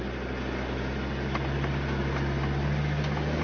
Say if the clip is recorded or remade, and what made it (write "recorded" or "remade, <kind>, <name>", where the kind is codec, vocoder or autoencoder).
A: recorded